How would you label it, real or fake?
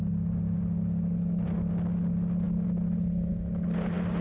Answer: real